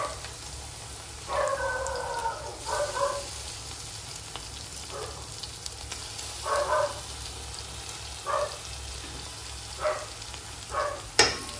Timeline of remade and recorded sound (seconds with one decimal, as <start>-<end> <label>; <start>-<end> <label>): 0.0-11.6 recorded